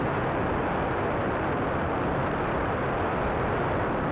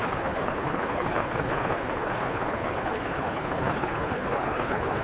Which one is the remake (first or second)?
second